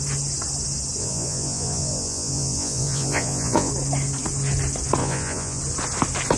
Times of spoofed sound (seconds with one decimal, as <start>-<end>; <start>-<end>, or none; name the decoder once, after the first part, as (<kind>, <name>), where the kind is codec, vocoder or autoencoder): 1.0-3.7 (vocoder, Vocos); 5.0-5.6